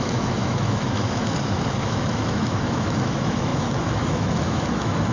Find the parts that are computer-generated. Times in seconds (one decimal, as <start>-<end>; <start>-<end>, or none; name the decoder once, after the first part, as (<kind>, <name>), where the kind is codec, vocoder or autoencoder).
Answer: 0.0-5.1 (autoencoder, DAC-VAE)